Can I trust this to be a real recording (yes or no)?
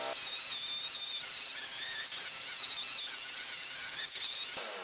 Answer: yes